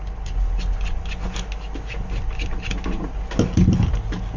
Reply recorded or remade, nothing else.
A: recorded